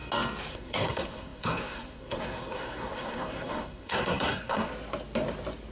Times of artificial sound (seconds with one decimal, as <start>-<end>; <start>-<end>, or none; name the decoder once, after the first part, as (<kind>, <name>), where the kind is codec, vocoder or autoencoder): 0.5-4.7 (codec, SNAC)